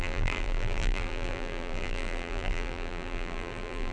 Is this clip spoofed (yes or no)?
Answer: yes